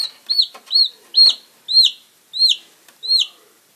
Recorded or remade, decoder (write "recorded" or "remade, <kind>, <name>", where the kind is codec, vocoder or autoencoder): recorded